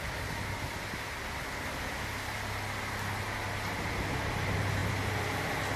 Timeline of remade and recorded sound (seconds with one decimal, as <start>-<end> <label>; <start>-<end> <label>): 0.0-5.8 recorded